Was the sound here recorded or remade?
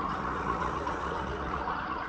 remade